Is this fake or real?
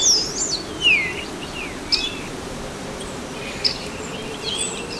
real